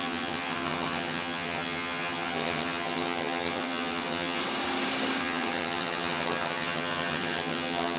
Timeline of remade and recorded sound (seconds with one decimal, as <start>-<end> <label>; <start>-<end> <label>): 0.0-4.4 remade; 4.4-5.2 recorded; 5.2-8.0 remade